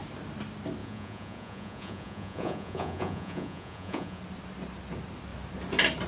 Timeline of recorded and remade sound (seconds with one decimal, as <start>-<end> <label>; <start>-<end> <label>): 0.0-0.8 recorded; 0.8-4.2 remade; 4.2-6.1 recorded